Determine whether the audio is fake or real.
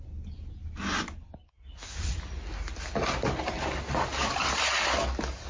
real